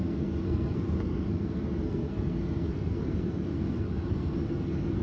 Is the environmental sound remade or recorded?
remade